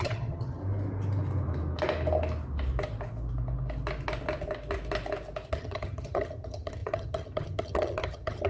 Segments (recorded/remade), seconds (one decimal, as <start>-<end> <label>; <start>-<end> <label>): 0.0-0.6 remade; 0.6-5.5 recorded; 5.5-8.5 remade